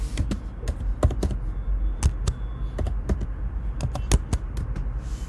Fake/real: real